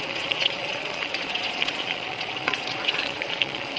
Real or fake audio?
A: fake